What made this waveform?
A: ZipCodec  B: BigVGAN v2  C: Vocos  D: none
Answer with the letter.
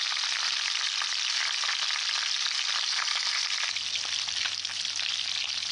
D